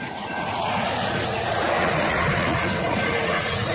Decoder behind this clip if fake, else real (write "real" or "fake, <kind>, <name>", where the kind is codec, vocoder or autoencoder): fake, vocoder, Vocos